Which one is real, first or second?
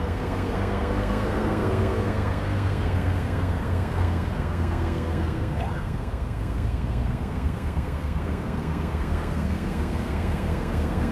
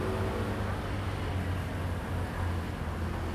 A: second